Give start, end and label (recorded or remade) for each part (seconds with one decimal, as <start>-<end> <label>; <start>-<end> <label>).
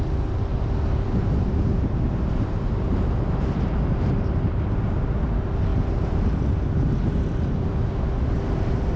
0.0-9.0 recorded